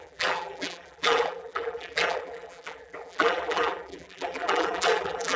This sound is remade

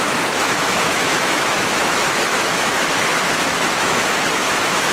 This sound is remade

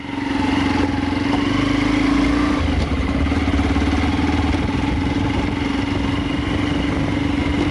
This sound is recorded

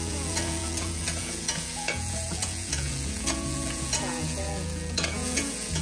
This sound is remade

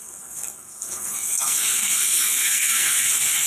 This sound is remade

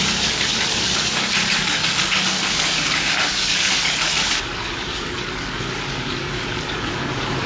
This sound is remade